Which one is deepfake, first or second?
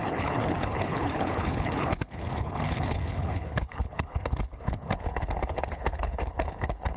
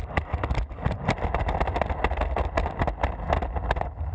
first